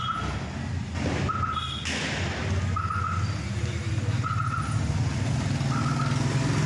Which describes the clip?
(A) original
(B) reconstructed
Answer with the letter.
A